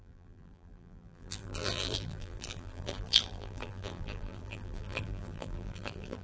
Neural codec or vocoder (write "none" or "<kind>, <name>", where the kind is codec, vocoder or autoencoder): vocoder, BigVGAN v2